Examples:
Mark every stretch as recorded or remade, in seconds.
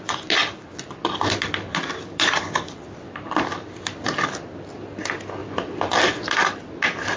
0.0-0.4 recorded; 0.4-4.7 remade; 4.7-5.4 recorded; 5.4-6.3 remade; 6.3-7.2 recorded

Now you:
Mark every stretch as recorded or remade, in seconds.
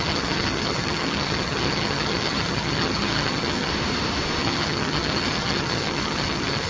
0.0-3.7 remade; 3.7-4.4 recorded; 4.4-6.7 remade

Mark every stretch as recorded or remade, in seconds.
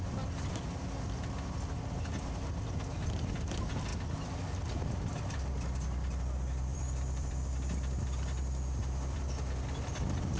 0.0-6.7 recorded; 6.7-9.2 remade; 9.2-10.4 recorded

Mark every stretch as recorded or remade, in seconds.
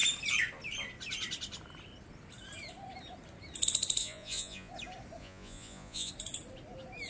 0.0-4.0 recorded; 4.0-4.7 remade; 4.7-5.2 recorded; 5.2-6.1 remade; 6.1-7.1 recorded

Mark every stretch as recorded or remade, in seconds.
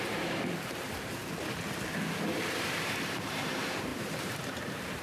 0.0-1.2 remade; 1.2-2.3 recorded; 2.3-5.0 remade